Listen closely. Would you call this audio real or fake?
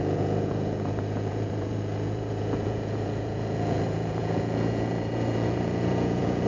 fake